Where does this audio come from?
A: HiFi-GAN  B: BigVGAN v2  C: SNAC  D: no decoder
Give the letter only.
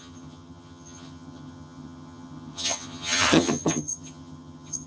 A